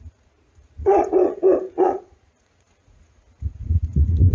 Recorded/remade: remade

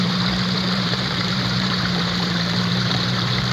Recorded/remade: remade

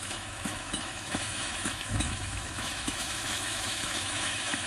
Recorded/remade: remade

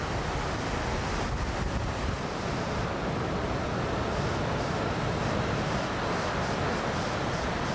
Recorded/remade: recorded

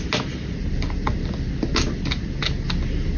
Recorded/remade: recorded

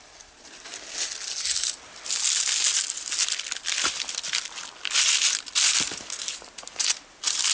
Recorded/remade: recorded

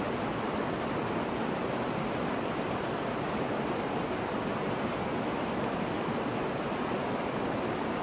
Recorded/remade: recorded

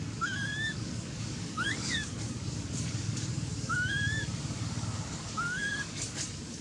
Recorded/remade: remade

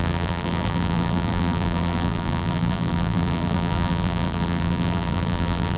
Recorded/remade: remade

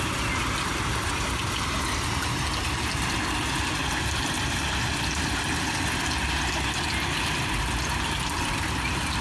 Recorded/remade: recorded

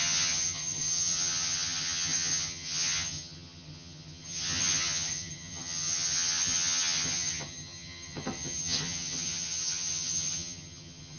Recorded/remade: remade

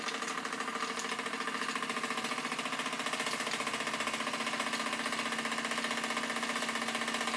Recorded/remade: recorded